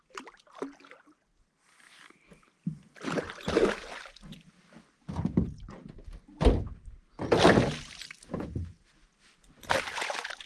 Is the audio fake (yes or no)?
no